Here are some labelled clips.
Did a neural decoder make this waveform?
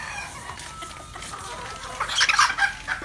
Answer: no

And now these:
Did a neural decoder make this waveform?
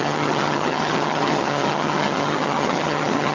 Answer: yes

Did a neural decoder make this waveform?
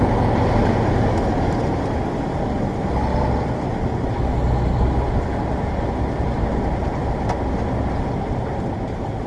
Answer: no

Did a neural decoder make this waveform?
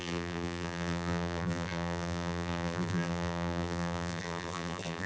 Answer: yes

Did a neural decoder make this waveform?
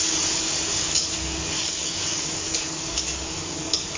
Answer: yes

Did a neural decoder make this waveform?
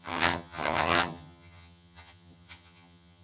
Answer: yes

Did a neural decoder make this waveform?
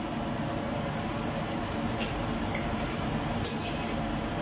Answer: no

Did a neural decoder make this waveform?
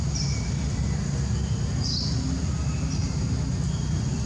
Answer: no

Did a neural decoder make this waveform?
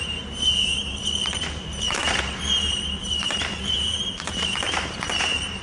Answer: yes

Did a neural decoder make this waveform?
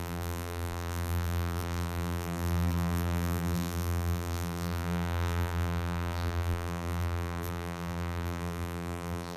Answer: yes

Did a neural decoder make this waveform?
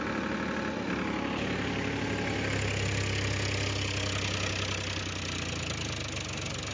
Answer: no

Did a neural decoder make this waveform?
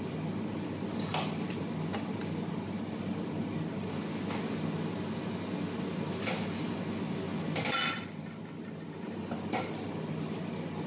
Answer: no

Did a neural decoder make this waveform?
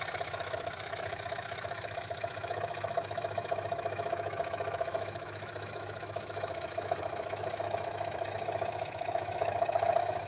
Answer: yes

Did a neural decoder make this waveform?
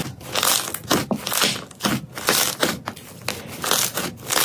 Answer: no